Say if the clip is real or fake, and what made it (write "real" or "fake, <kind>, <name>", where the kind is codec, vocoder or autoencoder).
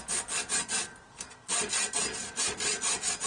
real